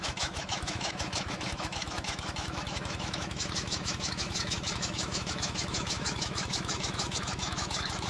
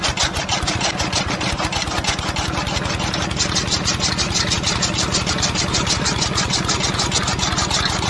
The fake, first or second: first